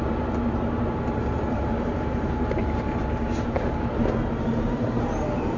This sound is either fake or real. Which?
fake